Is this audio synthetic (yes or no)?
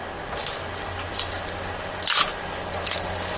no